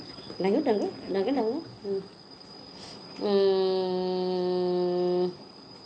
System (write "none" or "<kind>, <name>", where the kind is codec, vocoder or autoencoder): none